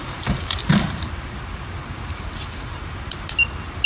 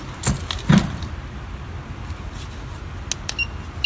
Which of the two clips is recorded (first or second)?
second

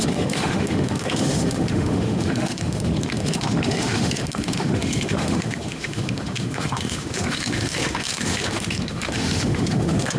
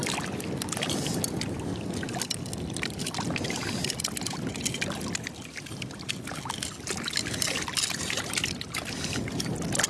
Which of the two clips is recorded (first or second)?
second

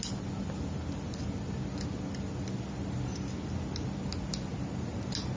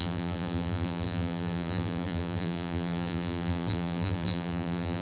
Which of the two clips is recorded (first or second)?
first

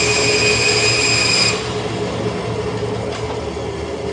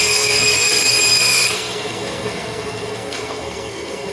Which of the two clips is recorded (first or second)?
first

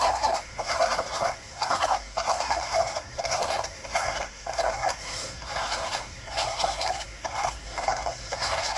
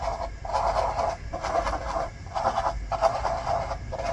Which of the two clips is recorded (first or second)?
second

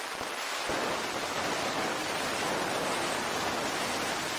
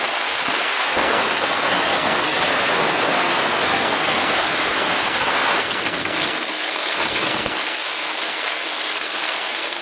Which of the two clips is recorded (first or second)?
first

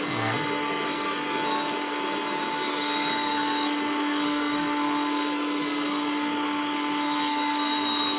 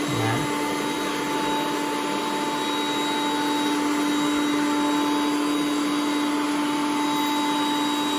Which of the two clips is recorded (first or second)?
second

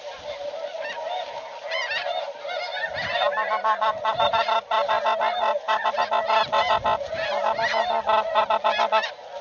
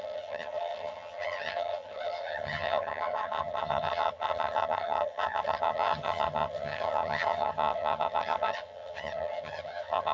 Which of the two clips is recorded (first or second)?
first